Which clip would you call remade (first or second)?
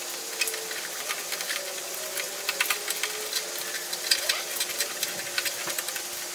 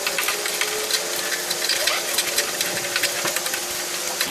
second